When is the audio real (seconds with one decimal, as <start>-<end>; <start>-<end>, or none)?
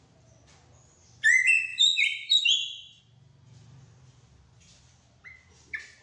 0.0-1.7; 3.0-6.0